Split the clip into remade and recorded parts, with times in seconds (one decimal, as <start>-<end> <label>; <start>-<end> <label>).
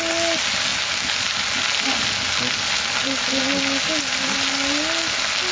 0.0-5.5 recorded